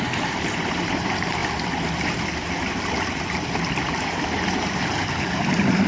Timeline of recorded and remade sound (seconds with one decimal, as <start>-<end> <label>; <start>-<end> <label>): 0.0-1.4 remade; 1.4-3.9 recorded; 3.9-5.9 remade